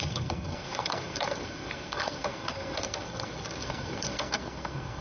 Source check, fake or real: fake